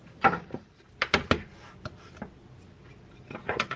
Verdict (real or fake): real